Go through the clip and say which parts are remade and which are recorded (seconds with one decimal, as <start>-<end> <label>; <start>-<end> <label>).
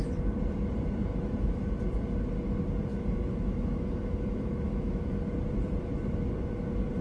0.0-1.1 recorded; 1.1-1.7 remade; 1.7-2.9 recorded; 2.9-5.1 remade; 5.1-7.0 recorded